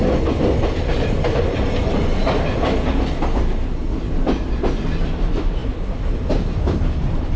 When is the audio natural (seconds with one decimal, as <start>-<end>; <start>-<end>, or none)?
0.0-5.6